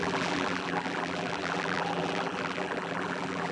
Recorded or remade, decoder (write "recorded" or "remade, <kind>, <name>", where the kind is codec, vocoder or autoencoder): remade, vocoder, BigVGAN v2